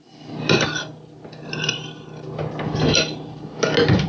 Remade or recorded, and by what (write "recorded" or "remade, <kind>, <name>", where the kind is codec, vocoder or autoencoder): recorded